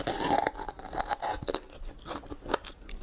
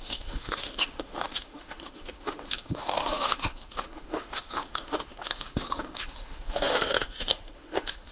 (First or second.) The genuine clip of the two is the first